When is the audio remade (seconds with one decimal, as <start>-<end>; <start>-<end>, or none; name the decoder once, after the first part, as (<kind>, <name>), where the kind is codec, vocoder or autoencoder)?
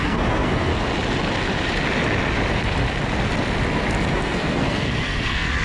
0.0-0.7 (codec, SNAC); 4.1-5.6